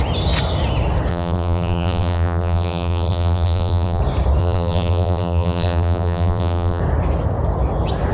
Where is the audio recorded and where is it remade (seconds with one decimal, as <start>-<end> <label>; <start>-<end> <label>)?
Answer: 0.0-1.1 recorded; 1.1-4.0 remade; 4.0-4.4 recorded; 4.4-6.8 remade; 6.8-8.1 recorded